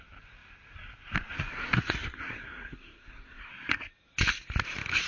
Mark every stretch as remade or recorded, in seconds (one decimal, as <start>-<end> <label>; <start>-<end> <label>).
0.0-1.3 recorded; 1.3-3.5 remade; 3.5-5.1 recorded